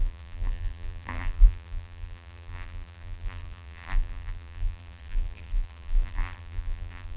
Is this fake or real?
fake